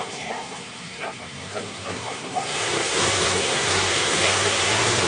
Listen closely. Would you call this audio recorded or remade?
remade